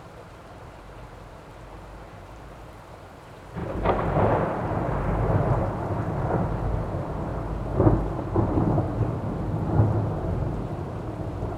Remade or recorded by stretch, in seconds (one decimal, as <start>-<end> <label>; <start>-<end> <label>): 0.0-7.3 remade; 7.3-10.2 recorded; 10.2-11.6 remade